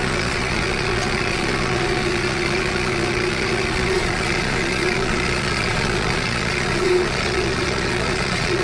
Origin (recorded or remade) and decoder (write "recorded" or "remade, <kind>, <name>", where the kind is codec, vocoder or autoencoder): remade, vocoder, Vocos